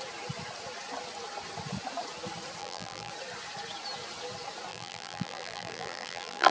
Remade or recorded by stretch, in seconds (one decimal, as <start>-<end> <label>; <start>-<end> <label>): 0.0-2.6 recorded; 2.6-3.1 remade; 3.1-4.7 recorded; 4.7-6.5 remade

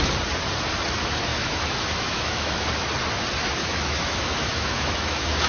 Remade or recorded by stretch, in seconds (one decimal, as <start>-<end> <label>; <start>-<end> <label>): 0.0-1.3 recorded; 1.3-2.6 remade; 2.6-3.6 recorded; 3.6-5.5 remade

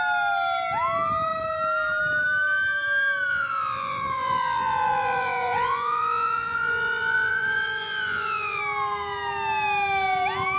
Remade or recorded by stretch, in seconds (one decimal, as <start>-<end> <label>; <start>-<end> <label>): 0.0-3.3 recorded; 3.3-8.6 remade; 8.6-10.6 recorded

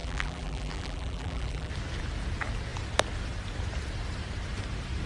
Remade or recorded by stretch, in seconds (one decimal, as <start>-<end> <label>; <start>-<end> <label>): 0.0-1.7 remade; 1.7-5.1 recorded

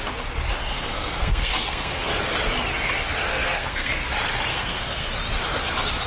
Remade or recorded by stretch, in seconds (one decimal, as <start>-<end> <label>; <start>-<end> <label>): 0.0-0.6 recorded; 0.6-2.1 remade; 2.1-3.3 recorded; 3.3-3.9 remade; 3.9-4.5 recorded; 4.5-5.1 remade; 5.1-6.1 recorded

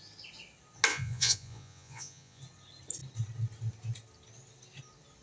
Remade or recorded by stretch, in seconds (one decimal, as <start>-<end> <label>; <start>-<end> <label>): 0.0-0.9 recorded; 0.9-2.4 remade; 2.4-5.2 recorded